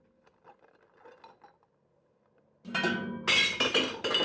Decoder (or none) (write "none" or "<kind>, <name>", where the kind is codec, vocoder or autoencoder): none